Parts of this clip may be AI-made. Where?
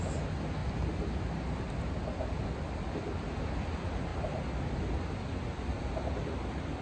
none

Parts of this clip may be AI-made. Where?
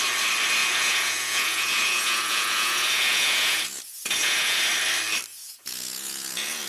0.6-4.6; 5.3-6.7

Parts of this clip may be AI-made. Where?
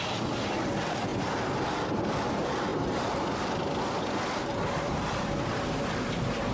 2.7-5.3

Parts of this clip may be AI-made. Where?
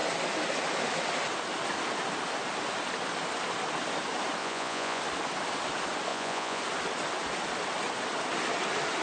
4.4-5.0; 6.1-6.6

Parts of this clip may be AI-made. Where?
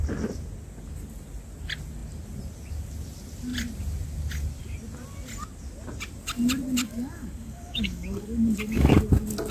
6.8-8.9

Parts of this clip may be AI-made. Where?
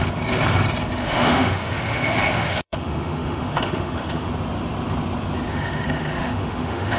1.0-4.3; 5.5-7.0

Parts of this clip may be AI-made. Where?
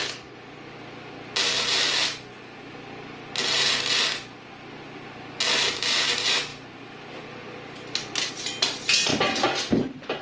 none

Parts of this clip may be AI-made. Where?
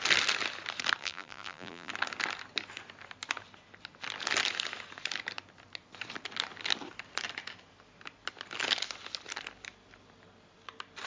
1.0-1.9